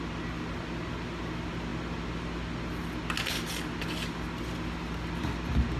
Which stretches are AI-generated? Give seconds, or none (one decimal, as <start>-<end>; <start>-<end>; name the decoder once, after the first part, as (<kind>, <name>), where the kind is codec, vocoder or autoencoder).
none